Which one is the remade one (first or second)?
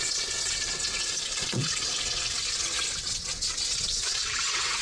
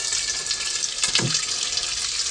first